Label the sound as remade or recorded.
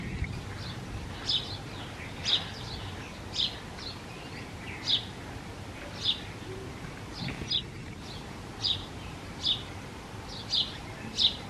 recorded